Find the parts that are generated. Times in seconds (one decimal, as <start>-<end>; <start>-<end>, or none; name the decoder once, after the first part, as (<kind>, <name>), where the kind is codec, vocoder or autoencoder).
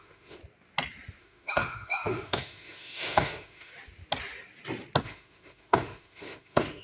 0.0-0.4 (autoencoder, DAC-VAE); 1.2-3.7; 5.0-6.8